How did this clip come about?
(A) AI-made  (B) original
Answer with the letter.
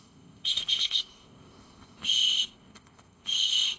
A